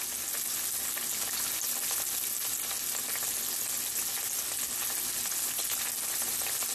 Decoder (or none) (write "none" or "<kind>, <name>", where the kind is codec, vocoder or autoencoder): none